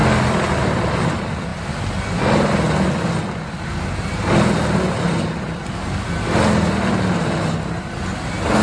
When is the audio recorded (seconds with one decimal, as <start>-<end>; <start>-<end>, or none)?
0.0-8.6